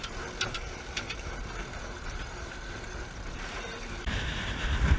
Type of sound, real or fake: fake